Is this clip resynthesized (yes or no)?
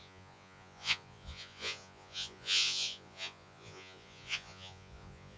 yes